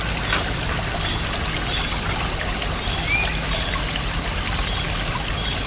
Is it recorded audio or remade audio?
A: recorded